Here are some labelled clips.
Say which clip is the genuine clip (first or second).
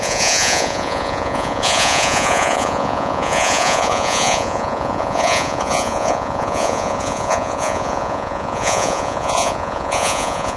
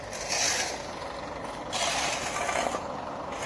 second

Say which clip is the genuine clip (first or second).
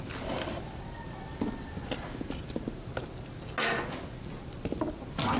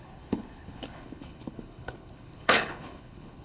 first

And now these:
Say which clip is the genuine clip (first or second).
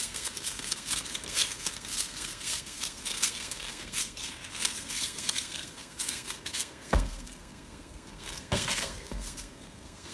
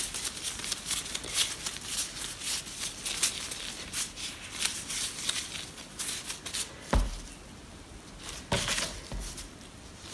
second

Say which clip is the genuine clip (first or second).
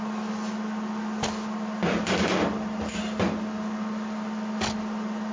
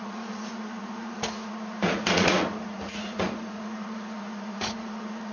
first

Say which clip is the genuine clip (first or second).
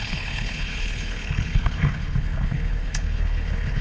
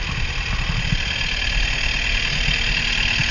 second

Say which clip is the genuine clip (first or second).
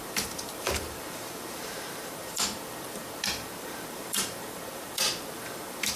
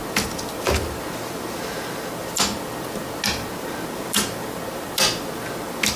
second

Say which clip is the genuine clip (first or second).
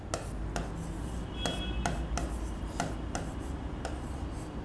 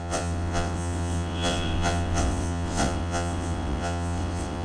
first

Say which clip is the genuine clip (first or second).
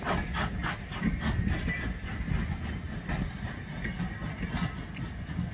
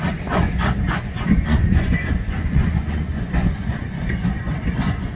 first